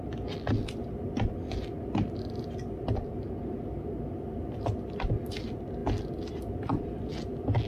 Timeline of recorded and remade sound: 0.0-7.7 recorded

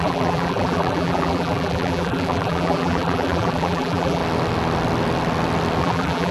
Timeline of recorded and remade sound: 0.0-4.2 remade; 4.2-5.8 recorded; 5.8-6.3 remade

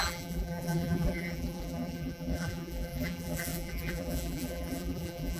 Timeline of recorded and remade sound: 0.0-5.4 remade

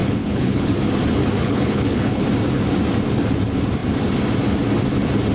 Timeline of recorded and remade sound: 0.0-0.7 remade; 0.7-1.4 recorded; 1.4-2.2 remade; 2.2-5.3 recorded

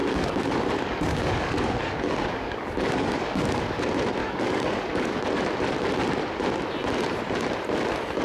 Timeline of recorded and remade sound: 0.0-3.8 remade; 3.8-4.2 recorded; 4.2-5.2 remade; 5.2-8.2 recorded